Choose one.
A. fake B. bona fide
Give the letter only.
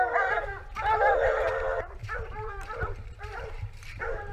A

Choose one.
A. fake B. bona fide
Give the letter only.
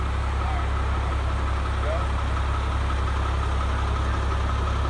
B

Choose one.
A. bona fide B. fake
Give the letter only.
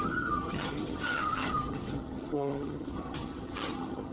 B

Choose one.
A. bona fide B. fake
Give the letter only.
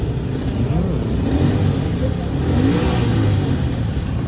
A